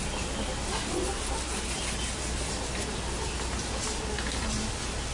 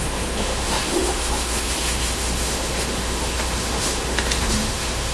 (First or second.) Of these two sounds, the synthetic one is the second